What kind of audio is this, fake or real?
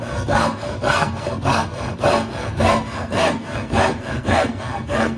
fake